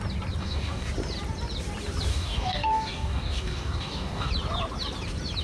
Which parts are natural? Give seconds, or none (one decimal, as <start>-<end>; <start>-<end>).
0.0-0.4; 0.9-2.1; 4.3-5.4